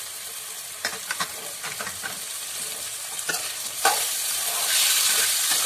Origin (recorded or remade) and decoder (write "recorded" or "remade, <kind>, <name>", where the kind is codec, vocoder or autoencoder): remade, vocoder, BigVGAN v2